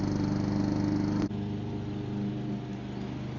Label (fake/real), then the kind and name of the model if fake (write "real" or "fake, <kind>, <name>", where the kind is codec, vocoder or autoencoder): real